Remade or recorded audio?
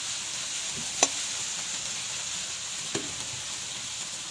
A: recorded